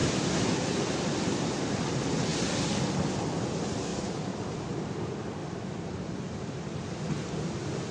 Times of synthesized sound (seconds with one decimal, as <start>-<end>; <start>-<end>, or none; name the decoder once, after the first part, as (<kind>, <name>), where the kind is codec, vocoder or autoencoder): 0.0-0.5 (vocoder, BigVGAN v2); 3.9-4.7; 5.4-7.1